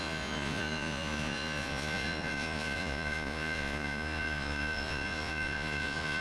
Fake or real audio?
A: fake